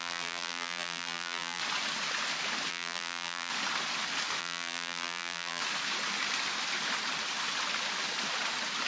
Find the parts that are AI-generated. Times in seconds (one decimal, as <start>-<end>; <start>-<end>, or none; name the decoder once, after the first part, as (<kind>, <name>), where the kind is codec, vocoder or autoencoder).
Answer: 0.0-1.6 (vocoder, BigVGAN v2); 2.7-3.5; 4.4-5.6